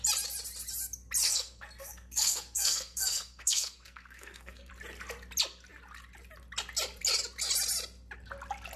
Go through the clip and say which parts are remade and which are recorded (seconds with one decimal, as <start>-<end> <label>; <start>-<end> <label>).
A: 0.0-1.2 recorded; 1.2-4.7 remade; 4.7-8.8 recorded